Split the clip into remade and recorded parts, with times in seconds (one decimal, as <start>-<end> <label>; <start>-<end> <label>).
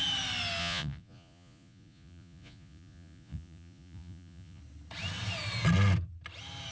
0.0-0.6 recorded; 0.6-4.6 remade; 4.6-6.7 recorded